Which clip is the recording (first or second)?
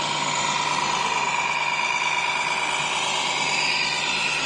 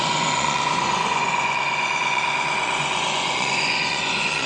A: first